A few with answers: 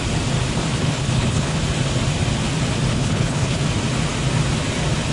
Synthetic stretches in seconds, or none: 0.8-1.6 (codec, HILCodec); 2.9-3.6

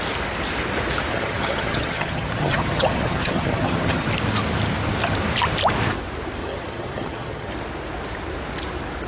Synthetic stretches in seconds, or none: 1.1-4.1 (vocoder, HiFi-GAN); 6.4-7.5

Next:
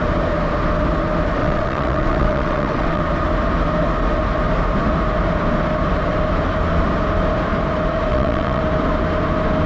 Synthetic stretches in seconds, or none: 1.4-3.0 (vocoder, WaveNeXt); 8.1-8.6